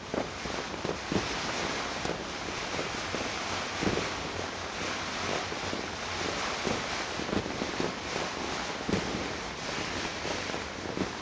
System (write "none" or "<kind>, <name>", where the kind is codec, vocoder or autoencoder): none